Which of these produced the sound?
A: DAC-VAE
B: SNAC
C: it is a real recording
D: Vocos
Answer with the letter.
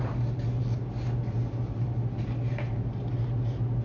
C